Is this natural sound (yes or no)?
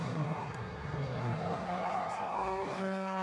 no